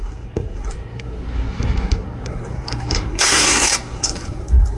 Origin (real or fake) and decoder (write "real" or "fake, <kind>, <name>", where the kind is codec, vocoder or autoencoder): fake, codec, SNAC